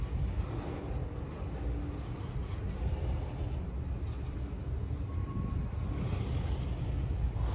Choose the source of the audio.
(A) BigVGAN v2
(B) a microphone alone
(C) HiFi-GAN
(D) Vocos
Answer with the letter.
B